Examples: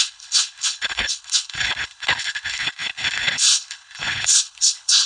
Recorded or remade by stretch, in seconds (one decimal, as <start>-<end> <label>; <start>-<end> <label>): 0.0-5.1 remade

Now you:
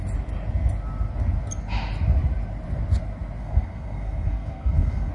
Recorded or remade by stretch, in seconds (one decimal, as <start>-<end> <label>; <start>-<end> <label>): 0.0-3.4 recorded; 3.4-5.1 remade

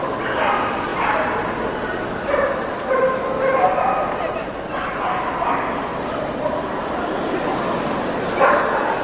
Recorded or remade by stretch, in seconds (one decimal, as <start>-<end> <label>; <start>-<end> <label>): 0.0-5.9 recorded; 5.9-7.0 remade; 7.0-9.0 recorded

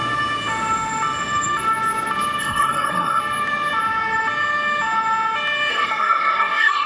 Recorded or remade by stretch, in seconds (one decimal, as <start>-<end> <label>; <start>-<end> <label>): 0.0-2.4 recorded; 2.4-3.2 remade; 3.2-5.7 recorded; 5.7-6.9 remade